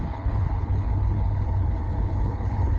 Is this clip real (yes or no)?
no